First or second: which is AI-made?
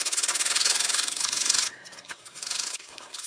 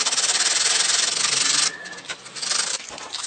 first